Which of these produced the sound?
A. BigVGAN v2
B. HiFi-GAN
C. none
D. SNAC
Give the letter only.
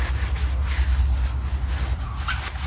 C